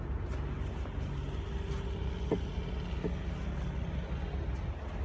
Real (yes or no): yes